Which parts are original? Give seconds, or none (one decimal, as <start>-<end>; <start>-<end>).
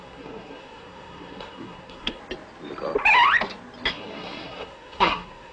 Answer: 2.2-3.9